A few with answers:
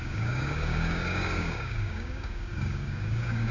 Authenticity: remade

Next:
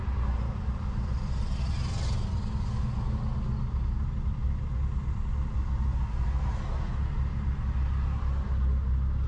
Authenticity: recorded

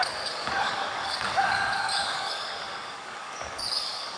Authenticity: remade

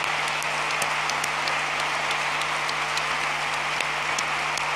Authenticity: recorded